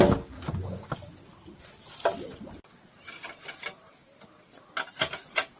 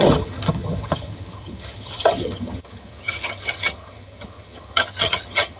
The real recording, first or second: first